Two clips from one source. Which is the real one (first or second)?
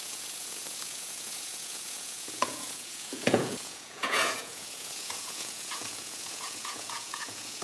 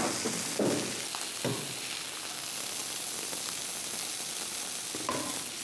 second